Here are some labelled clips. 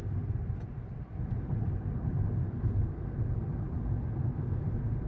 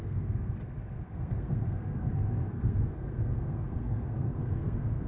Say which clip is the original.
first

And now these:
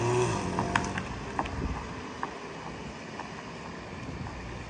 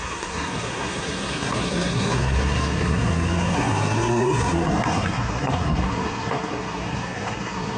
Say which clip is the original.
first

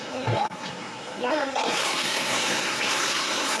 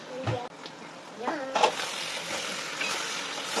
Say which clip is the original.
second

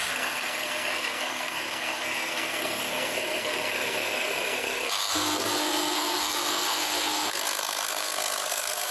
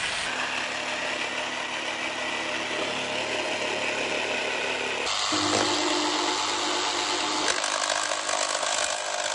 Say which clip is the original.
second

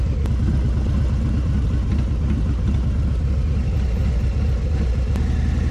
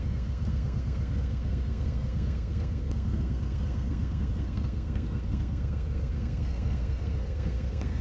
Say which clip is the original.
first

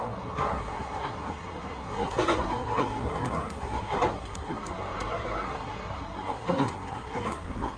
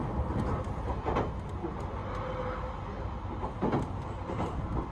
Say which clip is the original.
second